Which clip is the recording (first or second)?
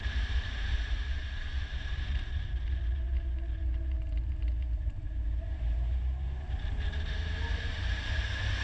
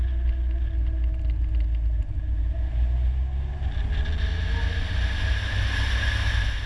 second